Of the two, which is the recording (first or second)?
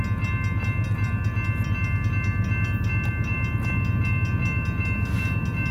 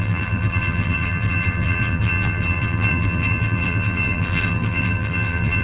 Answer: first